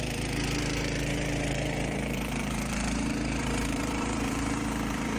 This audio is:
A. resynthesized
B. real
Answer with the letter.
A